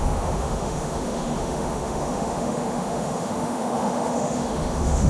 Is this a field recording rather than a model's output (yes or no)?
no